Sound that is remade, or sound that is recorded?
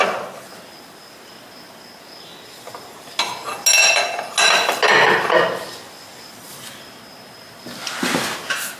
recorded